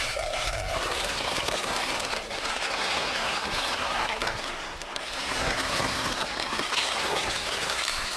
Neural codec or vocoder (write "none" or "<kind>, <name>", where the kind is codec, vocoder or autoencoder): codec, SNAC